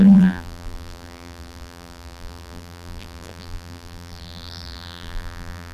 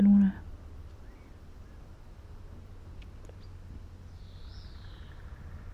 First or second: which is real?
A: second